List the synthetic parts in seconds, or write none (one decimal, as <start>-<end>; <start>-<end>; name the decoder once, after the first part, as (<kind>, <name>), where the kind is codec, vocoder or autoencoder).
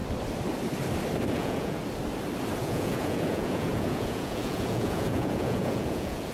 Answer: 1.3-1.8 (vocoder, Vocos); 2.6-6.3